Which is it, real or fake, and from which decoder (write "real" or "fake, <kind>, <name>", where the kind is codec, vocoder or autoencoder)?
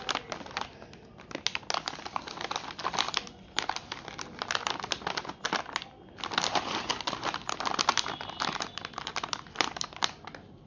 real